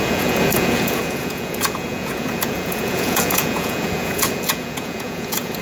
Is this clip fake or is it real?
fake